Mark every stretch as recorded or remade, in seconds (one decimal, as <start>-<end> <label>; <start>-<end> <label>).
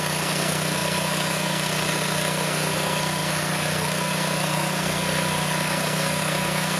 0.0-6.8 remade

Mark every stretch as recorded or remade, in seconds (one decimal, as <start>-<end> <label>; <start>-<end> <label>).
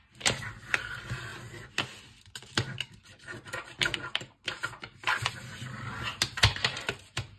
0.0-7.4 recorded